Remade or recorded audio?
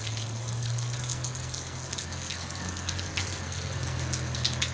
remade